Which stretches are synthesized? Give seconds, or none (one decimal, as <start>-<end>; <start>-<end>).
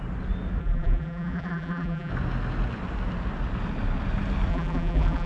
0.6-2.1; 4.5-5.3